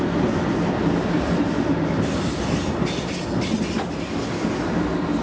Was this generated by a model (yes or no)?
no